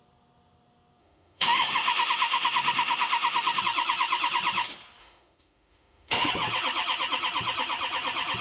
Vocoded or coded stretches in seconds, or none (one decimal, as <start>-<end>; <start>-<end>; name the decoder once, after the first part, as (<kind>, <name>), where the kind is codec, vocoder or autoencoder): 1.0-3.6 (autoencoder, DAC-VAE); 5.0-6.3